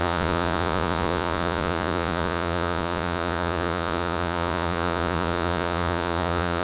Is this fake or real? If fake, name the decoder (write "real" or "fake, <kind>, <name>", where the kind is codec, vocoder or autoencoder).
fake, vocoder, Vocos